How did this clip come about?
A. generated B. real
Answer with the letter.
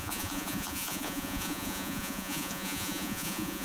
A